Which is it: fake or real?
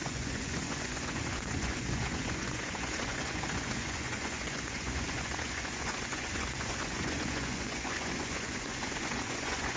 fake